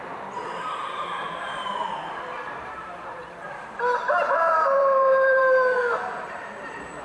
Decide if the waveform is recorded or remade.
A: remade